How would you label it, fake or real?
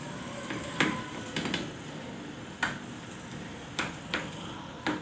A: real